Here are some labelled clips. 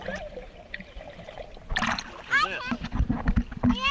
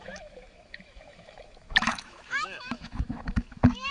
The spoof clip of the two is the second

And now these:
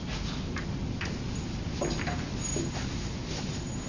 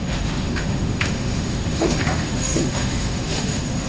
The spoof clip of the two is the second